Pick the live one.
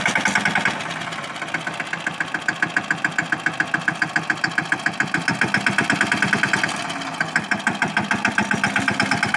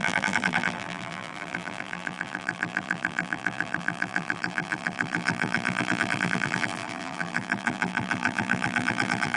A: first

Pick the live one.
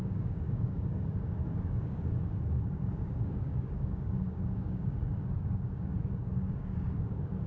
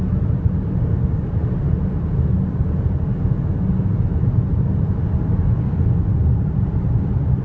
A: second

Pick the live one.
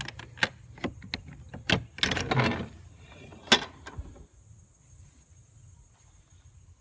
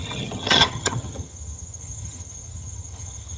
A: first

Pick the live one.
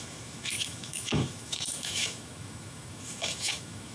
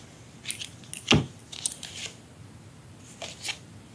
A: second